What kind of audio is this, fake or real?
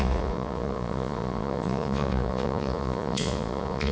fake